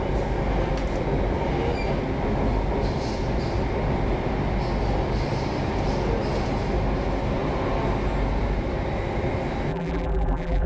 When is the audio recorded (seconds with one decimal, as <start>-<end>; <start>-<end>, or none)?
0.0-9.7